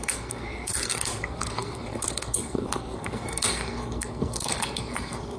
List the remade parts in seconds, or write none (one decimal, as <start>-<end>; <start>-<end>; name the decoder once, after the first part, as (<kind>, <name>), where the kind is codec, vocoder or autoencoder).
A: 0.0-5.4 (codec, SNAC)